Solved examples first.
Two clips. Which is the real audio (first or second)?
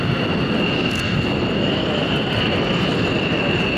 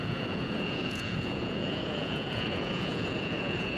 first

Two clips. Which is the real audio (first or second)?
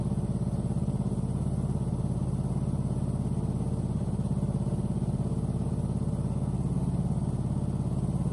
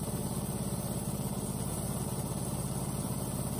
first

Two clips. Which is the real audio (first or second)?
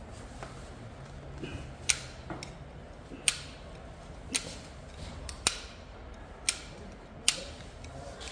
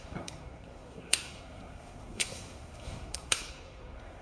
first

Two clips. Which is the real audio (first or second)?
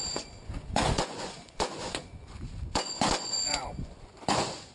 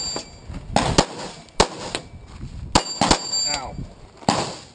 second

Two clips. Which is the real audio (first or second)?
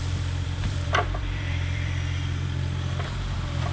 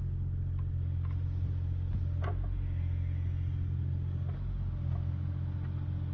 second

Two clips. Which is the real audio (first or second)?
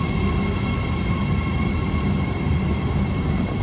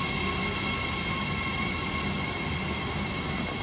second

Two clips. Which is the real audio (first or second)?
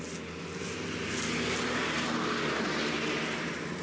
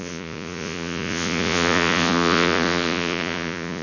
first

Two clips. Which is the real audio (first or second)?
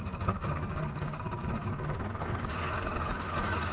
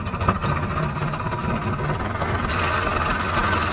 second